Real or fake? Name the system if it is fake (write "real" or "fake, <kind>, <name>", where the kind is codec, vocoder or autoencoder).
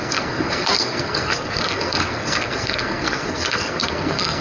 fake, codec, SNAC